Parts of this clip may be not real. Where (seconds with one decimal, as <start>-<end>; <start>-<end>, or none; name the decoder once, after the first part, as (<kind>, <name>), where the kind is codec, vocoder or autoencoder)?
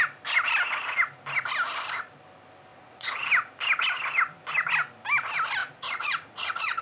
2.7-3.3 (vocoder, Vocos); 5.6-6.8